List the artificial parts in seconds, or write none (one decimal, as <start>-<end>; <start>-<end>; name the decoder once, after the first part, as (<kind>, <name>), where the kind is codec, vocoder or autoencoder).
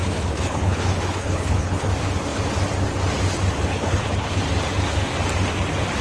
0.0-1.9 (codec, HILCodec); 3.7-4.4